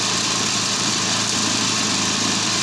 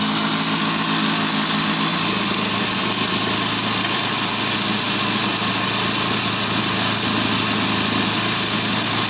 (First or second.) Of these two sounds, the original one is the second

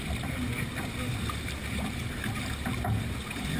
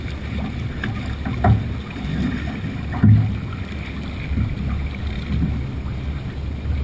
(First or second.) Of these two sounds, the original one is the second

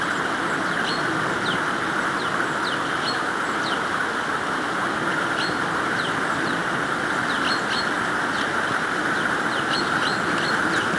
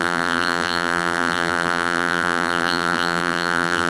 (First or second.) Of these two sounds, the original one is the first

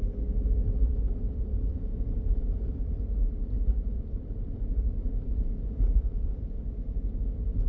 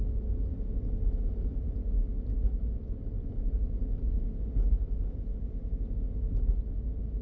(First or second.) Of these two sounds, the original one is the second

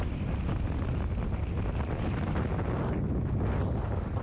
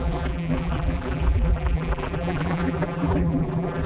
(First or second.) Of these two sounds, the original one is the first